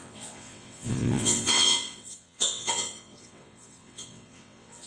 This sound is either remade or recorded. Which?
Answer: remade